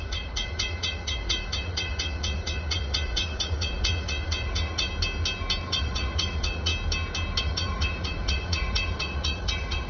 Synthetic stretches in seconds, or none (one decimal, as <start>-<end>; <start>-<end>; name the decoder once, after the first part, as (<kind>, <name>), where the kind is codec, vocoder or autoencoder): 0.0-4.9 (vocoder, Vocos); 5.6-6.7; 7.4-9.9